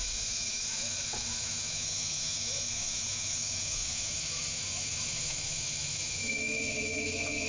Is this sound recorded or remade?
remade